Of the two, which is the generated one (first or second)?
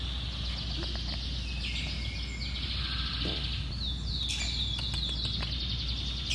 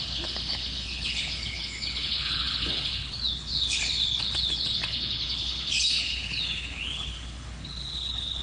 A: second